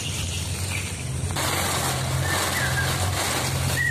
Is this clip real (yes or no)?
yes